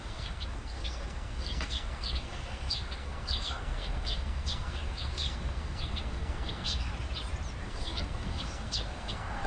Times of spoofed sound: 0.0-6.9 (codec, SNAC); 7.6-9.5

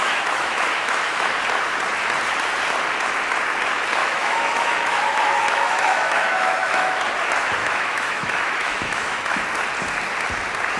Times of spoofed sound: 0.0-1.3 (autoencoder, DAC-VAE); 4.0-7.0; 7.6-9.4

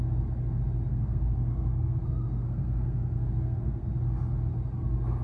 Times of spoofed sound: 0.9-3.9 (codec, SNAC)

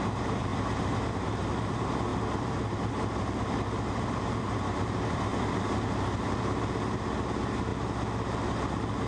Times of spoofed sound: 0.0-2.1 (vocoder, BigVGAN v2); 4.4-5.3; 7.3-7.7

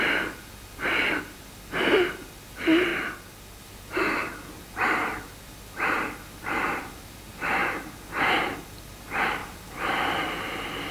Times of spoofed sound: 0.0-2.9 (vocoder, BigVGAN v2); 3.6-7.6; 8.9-10.9